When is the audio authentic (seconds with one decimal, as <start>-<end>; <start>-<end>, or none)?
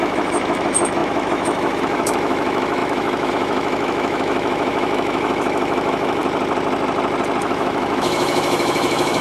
6.2-7.4